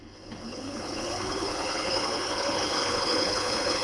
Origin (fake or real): fake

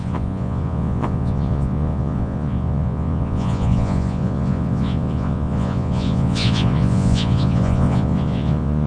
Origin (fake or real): fake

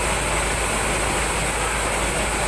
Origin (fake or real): real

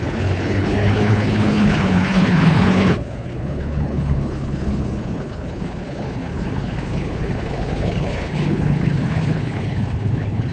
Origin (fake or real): fake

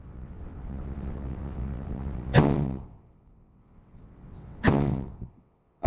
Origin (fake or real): fake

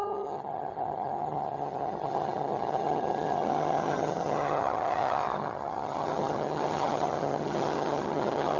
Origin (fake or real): fake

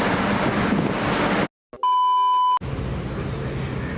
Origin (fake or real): real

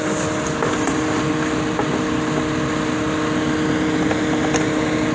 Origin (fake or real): fake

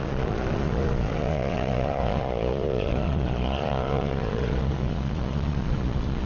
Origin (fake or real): fake